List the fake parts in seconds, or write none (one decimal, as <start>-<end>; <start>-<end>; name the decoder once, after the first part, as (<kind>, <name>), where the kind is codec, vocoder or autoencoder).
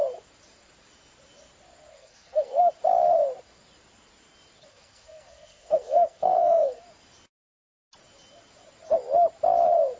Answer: 1.9-2.7 (codec, SNAC); 4.7-6.8